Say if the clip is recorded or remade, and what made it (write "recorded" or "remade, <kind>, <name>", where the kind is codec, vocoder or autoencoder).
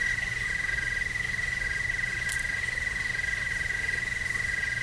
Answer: recorded